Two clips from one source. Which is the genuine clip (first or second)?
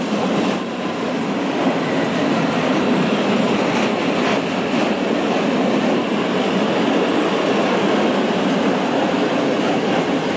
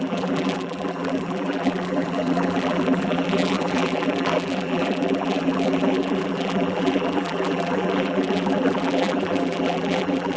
first